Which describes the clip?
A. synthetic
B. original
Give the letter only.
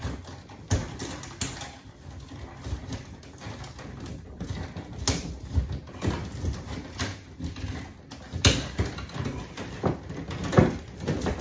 B